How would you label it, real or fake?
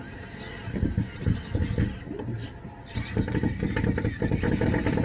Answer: real